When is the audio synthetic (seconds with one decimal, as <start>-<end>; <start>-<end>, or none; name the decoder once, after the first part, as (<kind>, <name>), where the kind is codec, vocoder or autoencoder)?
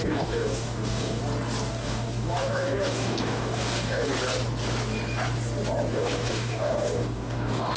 0.0-1.2 (codec, DAC); 1.7-4.1; 5.9-7.8